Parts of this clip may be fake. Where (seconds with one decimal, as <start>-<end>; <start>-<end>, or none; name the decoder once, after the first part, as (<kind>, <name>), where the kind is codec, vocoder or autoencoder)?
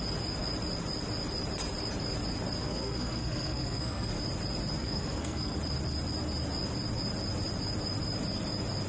2.6-4.2 (codec, SNAC); 4.8-5.6